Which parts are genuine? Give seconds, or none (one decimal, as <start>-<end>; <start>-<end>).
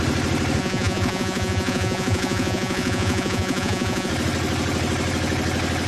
0.0-0.6; 4.1-5.9